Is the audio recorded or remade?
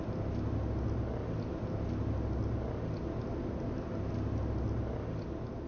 recorded